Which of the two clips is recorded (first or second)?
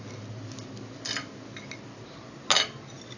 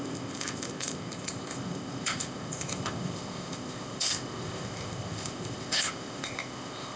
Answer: first